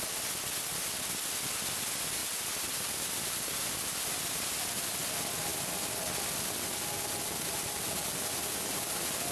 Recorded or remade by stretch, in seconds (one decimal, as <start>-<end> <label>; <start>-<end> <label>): 0.0-9.3 recorded